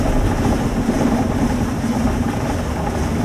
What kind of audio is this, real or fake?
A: real